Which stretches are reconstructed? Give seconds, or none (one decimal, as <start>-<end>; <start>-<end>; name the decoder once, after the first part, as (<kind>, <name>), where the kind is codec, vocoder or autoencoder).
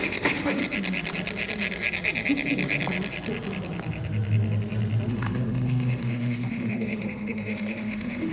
0.0-0.6 (autoencoder, DAC-VAE); 5.1-8.3